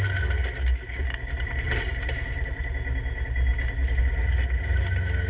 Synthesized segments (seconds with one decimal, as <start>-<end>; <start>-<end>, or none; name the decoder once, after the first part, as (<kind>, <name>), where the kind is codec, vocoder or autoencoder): 0.9-2.6 (vocoder, BigVGAN v2)